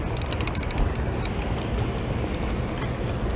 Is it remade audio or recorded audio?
recorded